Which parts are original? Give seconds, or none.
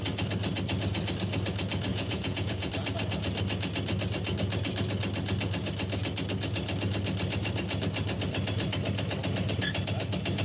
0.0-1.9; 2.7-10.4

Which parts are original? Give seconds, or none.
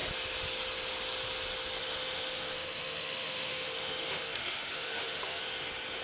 0.0-1.8; 5.4-6.0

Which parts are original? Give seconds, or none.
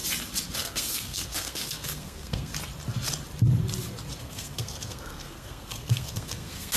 0.0-0.6; 2.5-4.2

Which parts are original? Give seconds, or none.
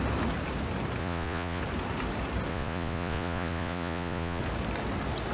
0.0-1.0; 1.6-2.5; 4.4-5.3